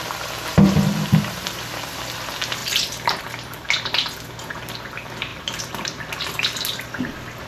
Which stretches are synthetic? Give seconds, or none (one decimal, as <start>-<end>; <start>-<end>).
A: 2.6-3.2; 5.3-6.0